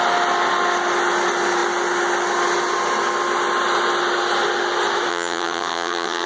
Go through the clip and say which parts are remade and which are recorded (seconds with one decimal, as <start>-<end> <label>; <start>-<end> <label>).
0.0-5.1 recorded; 5.1-6.3 remade